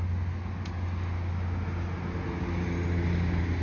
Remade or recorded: recorded